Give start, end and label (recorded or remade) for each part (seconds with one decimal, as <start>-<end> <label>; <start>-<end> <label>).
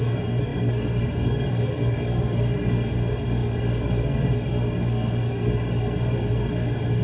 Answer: 0.0-7.0 remade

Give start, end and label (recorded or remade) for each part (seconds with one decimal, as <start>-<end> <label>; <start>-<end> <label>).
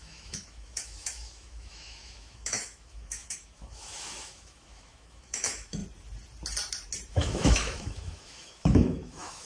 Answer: 0.0-5.8 remade; 5.8-7.1 recorded; 7.1-9.4 remade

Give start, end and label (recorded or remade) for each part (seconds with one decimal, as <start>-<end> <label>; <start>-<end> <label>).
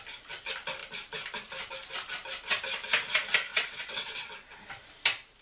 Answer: 0.0-3.5 recorded; 3.5-4.3 remade; 4.3-5.4 recorded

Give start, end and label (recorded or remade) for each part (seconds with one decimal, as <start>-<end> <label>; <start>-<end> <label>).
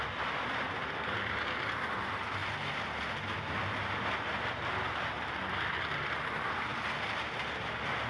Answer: 0.0-2.4 remade; 2.4-5.6 recorded; 5.6-6.7 remade; 6.7-7.3 recorded; 7.3-8.1 remade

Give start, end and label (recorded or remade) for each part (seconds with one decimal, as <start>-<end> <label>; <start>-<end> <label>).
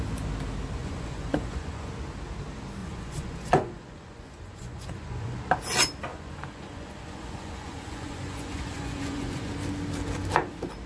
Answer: 0.0-0.8 recorded; 0.8-1.9 remade; 1.9-2.8 recorded; 2.8-5.4 remade; 5.4-6.1 recorded; 6.1-9.5 remade; 9.5-10.9 recorded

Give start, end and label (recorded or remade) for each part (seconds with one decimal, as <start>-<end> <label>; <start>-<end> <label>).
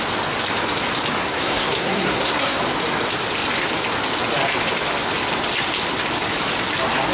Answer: 0.0-1.2 recorded; 1.2-2.6 remade; 2.6-7.1 recorded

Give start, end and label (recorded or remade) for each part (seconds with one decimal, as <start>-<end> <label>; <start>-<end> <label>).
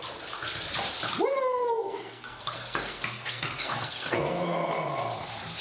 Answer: 0.0-1.3 recorded; 1.3-4.7 remade; 4.7-5.6 recorded